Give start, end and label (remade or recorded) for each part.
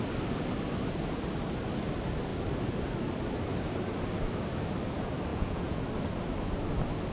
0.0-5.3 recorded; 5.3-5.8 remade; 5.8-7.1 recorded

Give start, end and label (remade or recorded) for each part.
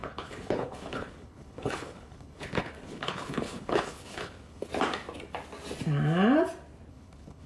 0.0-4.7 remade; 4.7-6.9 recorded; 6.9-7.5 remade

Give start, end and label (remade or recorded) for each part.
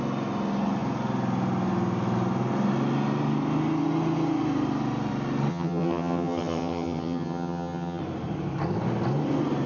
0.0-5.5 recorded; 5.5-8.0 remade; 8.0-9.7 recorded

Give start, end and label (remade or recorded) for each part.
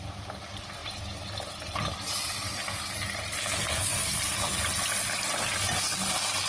0.0-6.5 recorded